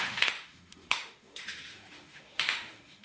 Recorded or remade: remade